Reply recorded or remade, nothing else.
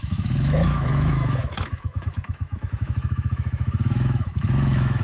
remade